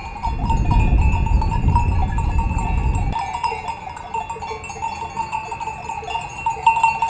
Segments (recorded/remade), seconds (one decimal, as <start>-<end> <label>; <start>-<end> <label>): 0.0-7.1 recorded